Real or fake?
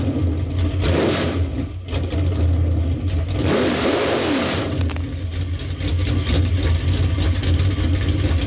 real